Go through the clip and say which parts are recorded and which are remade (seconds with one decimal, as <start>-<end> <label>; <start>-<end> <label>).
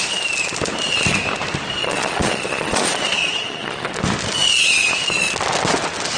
0.0-1.8 recorded; 1.8-3.9 remade; 3.9-6.2 recorded